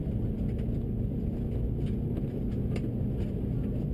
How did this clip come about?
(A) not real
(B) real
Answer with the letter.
B